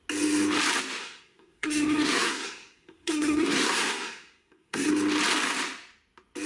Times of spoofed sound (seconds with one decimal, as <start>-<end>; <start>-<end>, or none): 1.0-4.9